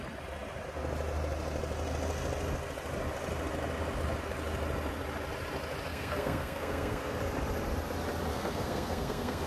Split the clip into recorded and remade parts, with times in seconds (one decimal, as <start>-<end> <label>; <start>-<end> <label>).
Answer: 0.0-5.9 recorded; 5.9-7.2 remade; 7.2-8.3 recorded; 8.3-9.5 remade